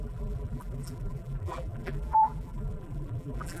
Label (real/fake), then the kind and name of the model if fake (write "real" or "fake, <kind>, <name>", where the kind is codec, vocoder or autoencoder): fake, vocoder, BigVGAN v2